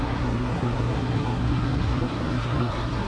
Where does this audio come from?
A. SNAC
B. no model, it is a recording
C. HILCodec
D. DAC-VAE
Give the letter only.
A